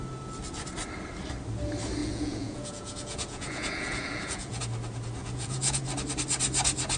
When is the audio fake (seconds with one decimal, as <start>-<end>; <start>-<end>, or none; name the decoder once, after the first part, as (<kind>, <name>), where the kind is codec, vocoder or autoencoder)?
2.0-4.6 (vocoder, Vocos); 5.2-5.8